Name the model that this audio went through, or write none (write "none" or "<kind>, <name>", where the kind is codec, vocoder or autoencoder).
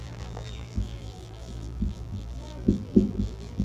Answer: vocoder, BigVGAN v2